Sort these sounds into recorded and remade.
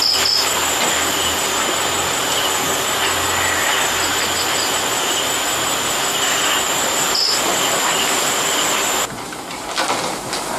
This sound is recorded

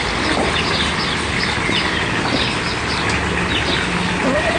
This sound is recorded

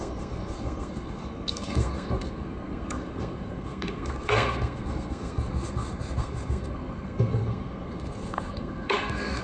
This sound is remade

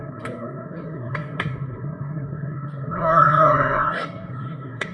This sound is remade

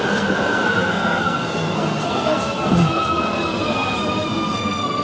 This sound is remade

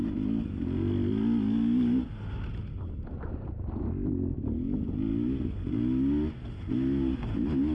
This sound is recorded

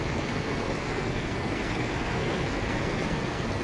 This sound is remade